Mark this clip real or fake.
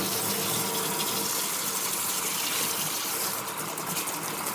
real